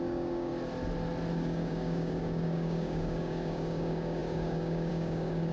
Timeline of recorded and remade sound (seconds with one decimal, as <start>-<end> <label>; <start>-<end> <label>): 0.0-0.5 remade; 0.5-1.3 recorded; 1.3-5.5 remade